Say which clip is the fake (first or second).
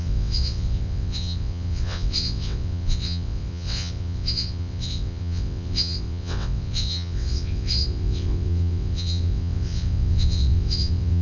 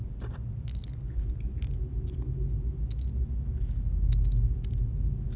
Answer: first